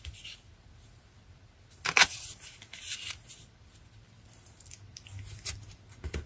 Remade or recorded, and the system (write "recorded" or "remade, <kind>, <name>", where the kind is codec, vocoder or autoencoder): recorded